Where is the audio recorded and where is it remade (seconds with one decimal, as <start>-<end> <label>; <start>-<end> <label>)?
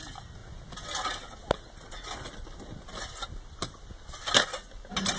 0.0-5.2 recorded